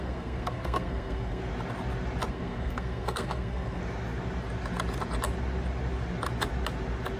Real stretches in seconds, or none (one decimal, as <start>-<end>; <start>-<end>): 1.4-2.3; 3.8-7.2